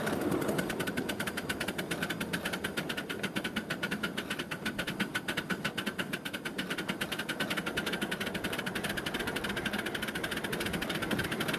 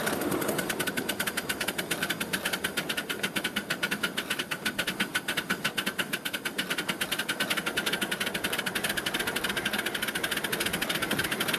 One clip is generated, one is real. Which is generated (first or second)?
first